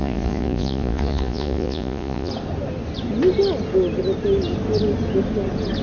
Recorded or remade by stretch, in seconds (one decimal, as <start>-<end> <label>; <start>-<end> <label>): 0.0-2.3 remade; 2.3-5.8 recorded

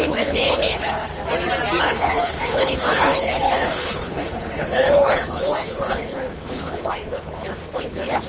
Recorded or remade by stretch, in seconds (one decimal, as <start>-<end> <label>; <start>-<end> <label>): 0.0-1.1 remade; 1.1-1.8 recorded; 1.8-8.3 remade

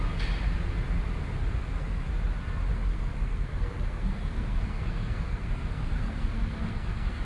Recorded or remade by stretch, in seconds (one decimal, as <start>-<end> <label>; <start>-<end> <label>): 0.0-1.5 recorded; 1.5-2.1 remade; 2.1-2.7 recorded; 2.7-7.2 remade

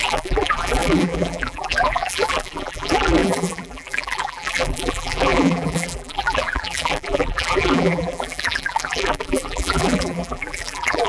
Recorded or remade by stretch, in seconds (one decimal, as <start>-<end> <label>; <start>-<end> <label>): 0.0-11.1 remade

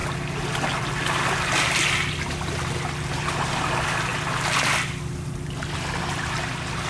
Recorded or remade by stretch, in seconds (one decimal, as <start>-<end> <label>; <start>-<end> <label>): 0.0-6.9 recorded